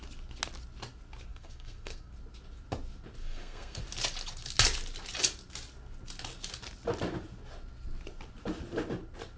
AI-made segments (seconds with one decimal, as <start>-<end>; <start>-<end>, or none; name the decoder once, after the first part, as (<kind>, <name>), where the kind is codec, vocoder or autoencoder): 1.3-2.1 (codec, SNAC); 3.2-3.8